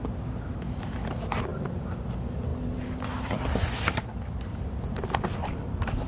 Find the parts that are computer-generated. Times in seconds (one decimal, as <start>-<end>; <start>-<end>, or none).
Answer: none